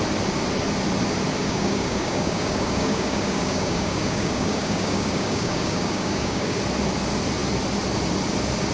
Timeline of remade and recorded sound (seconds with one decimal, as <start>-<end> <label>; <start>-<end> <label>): 0.0-1.4 recorded; 1.4-6.6 remade; 6.6-8.7 recorded